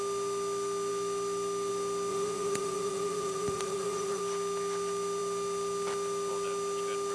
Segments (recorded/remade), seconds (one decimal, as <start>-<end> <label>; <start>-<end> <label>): 0.0-2.1 recorded; 2.1-4.2 remade; 4.2-7.1 recorded